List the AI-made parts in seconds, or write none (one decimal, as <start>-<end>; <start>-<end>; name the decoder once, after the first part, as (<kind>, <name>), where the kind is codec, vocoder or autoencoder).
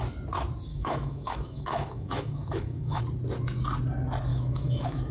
0.7-3.0 (autoencoder, DAC-VAE); 4.3-5.1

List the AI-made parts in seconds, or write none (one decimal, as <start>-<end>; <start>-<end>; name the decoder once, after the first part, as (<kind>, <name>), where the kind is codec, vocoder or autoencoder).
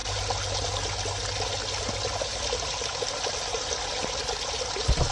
none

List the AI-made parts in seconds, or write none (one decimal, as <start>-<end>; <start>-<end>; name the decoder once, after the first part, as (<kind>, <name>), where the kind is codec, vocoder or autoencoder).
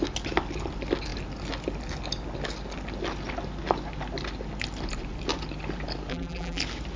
6.1-6.6 (vocoder, BigVGAN v2)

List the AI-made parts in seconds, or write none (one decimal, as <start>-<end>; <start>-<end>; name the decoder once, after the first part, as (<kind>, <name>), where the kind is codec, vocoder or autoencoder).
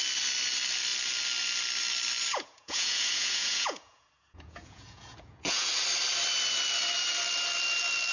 2.3-5.7 (vocoder, Vocos)